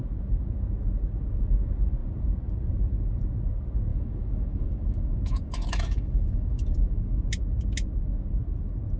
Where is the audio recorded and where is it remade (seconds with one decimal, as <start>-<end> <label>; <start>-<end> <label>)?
0.0-3.9 recorded; 3.9-7.2 remade; 7.2-9.0 recorded